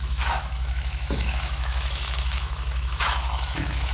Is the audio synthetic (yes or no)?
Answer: yes